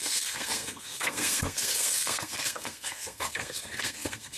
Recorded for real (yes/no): no